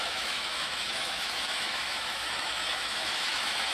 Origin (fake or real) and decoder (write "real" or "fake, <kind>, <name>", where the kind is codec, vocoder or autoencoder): fake, autoencoder, DAC-VAE